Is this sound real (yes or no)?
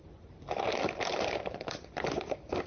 yes